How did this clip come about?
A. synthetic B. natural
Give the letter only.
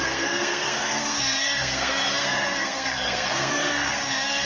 A